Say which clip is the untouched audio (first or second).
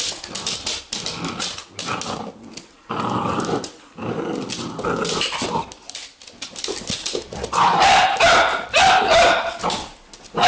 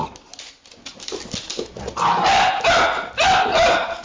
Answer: second